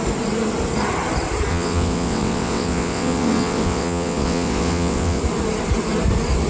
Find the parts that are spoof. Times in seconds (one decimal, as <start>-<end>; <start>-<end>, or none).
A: 1.5-5.2